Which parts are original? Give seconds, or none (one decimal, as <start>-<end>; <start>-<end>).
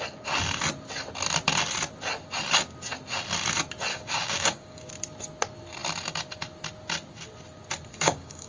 0.0-3.9; 4.9-7.9